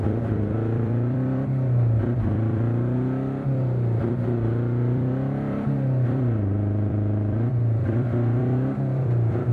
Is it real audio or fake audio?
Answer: fake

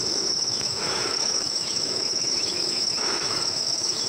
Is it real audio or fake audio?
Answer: fake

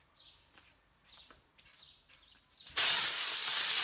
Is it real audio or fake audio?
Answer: fake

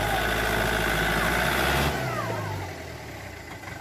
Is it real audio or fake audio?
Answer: real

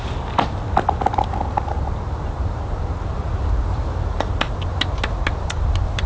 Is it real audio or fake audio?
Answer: real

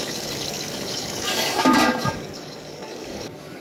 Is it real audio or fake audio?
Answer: fake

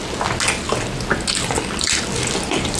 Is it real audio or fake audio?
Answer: real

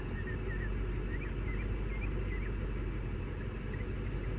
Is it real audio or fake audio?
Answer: real